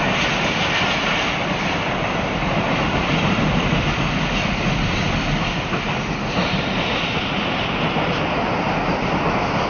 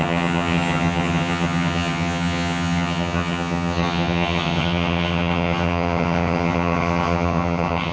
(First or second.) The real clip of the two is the first